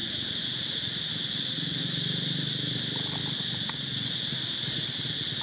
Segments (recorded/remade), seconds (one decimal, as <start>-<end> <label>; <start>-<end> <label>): 0.0-1.1 remade; 1.1-5.4 recorded